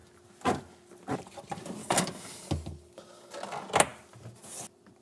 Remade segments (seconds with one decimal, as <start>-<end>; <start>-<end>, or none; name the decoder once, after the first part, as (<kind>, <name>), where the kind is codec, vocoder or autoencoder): 1.8-2.5 (codec, DAC)